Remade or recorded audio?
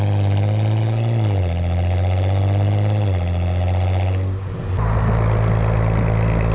recorded